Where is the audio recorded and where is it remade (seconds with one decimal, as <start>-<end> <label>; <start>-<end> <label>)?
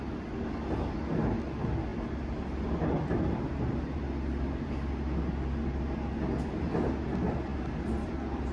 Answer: 0.0-8.5 recorded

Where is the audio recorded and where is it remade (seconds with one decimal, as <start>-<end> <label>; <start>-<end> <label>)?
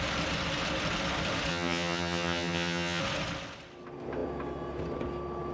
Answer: 0.0-1.5 recorded; 1.5-3.0 remade; 3.0-5.5 recorded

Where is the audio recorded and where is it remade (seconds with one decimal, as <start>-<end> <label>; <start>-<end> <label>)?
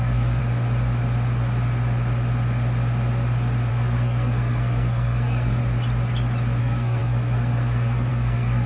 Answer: 0.0-0.4 remade; 0.4-3.7 recorded; 3.7-5.6 remade; 5.6-6.6 recorded; 6.6-8.7 remade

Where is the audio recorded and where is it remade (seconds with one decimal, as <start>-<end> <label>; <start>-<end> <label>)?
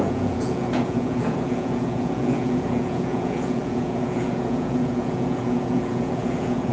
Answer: 0.0-6.7 remade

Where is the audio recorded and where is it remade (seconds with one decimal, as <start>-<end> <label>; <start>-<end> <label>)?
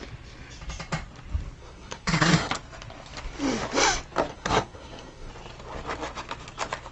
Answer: 0.0-1.6 recorded; 1.6-2.5 remade; 2.5-4.3 recorded; 4.3-5.3 remade; 5.3-6.9 recorded